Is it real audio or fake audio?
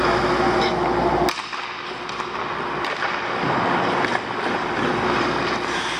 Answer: real